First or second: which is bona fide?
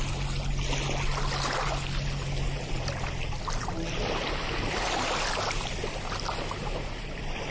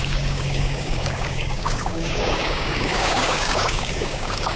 first